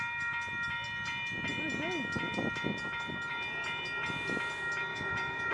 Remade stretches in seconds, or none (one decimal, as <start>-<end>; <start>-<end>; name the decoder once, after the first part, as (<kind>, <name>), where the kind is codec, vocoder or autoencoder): 4.9-5.5 (vocoder, Vocos)